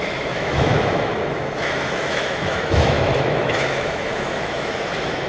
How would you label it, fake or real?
fake